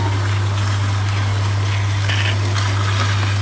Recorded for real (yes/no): yes